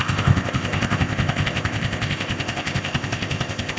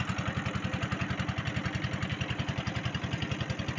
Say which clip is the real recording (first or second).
second